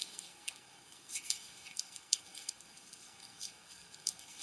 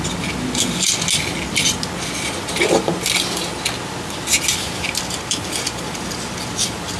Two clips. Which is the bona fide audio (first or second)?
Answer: second